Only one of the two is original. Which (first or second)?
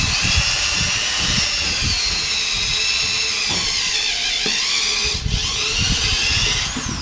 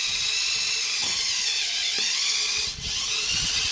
first